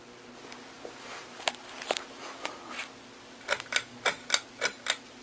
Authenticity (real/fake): real